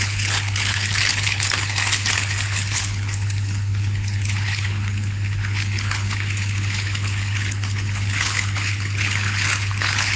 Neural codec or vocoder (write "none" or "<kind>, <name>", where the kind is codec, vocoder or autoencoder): codec, HILCodec